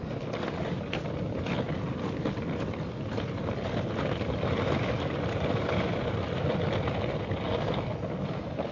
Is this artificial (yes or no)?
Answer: no